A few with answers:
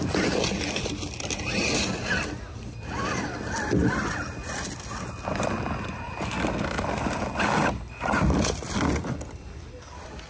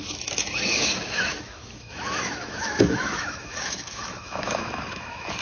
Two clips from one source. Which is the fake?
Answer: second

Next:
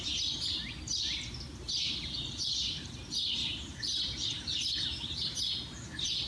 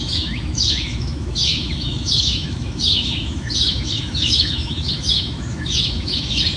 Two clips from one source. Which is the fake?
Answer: second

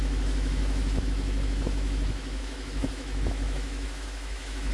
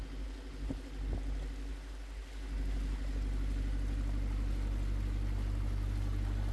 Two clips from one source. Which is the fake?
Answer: first